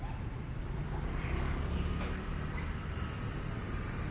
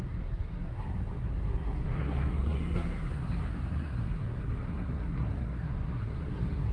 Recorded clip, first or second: first